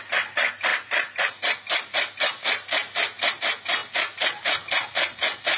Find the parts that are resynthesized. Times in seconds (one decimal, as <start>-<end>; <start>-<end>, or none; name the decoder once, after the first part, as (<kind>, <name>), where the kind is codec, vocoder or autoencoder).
none